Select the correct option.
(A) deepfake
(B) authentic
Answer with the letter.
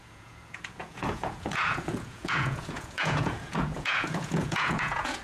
A